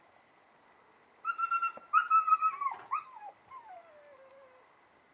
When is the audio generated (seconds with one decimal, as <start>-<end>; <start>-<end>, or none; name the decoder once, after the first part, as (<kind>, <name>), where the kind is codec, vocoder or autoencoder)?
none